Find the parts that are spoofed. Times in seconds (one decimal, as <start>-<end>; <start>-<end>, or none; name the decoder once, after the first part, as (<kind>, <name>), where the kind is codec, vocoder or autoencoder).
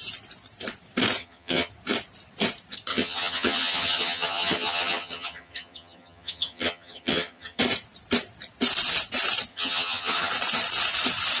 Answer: 1.2-1.7 (vocoder, HiFi-GAN); 2.9-7.6; 9.5-10.3